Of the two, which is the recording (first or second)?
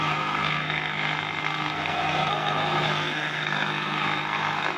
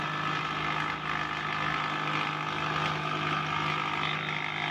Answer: second